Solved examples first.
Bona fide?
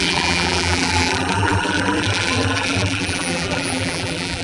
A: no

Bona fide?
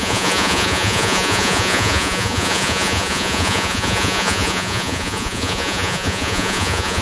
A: no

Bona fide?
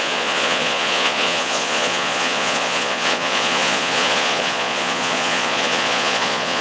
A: no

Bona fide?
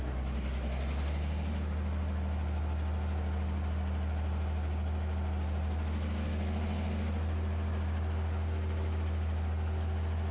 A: yes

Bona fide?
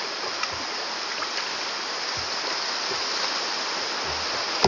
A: yes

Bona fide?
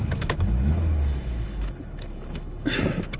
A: no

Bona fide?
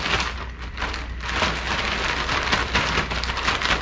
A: yes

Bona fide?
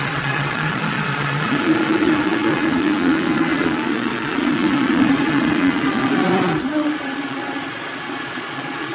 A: no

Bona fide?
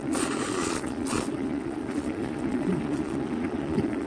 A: no